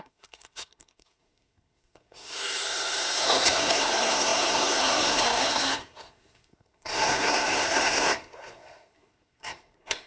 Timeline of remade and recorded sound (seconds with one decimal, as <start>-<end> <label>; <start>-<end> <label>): 0.0-10.1 remade